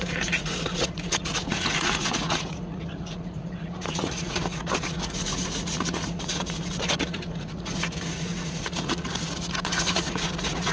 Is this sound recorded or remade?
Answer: remade